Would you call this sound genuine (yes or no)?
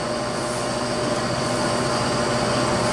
no